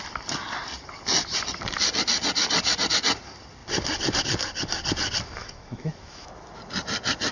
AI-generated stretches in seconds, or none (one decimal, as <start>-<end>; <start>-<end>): 5.4-6.6